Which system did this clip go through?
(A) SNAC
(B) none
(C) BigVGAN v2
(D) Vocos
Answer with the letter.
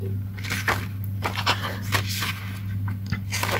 B